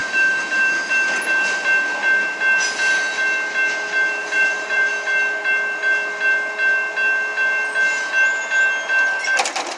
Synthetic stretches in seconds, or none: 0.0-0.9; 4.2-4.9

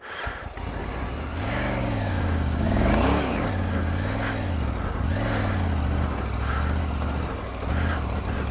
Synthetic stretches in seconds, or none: 1.8-3.2

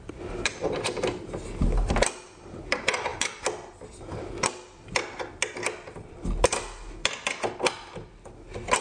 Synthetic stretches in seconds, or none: none

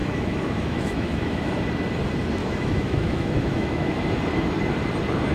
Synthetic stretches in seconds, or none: 0.0-1.5; 2.4-4.0

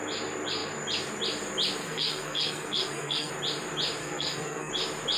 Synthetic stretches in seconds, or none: 1.8-3.3; 4.0-4.7

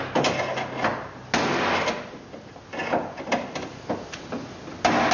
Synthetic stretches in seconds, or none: none